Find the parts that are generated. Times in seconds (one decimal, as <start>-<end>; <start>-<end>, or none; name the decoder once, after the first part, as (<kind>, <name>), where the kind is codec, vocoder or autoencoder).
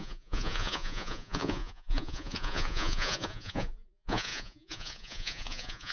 0.0-5.9 (vocoder, Vocos)